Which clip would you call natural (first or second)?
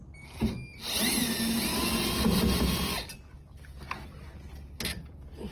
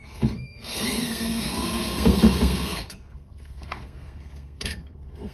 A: first